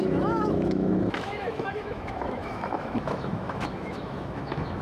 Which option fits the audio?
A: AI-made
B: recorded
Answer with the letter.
A